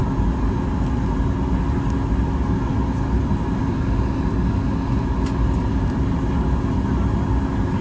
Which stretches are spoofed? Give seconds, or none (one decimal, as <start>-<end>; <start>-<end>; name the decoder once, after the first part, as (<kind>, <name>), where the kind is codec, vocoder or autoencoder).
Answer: none

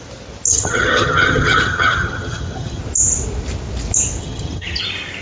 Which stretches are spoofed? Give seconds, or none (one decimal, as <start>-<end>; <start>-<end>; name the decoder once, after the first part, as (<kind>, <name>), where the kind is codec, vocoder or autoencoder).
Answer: 0.5-2.8 (vocoder, HiFi-GAN); 4.2-4.8

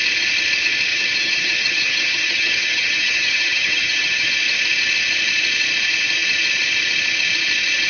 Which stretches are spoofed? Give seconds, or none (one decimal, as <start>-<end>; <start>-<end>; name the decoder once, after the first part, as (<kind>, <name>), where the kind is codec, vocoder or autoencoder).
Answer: 0.9-4.3 (vocoder, HiFi-GAN)

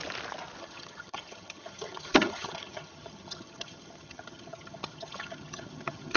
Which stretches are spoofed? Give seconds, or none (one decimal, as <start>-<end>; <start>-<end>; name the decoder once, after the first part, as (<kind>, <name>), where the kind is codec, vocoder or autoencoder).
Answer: 0.6-6.2 (vocoder, HiFi-GAN)

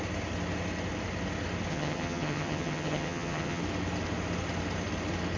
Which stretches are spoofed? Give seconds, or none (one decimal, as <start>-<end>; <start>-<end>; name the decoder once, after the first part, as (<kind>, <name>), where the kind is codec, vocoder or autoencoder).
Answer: 1.7-3.6 (vocoder, HiFi-GAN)